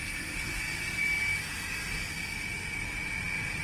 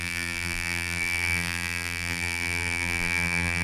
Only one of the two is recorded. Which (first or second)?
first